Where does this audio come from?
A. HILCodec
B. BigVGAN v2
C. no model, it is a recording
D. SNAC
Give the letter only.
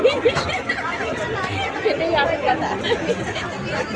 C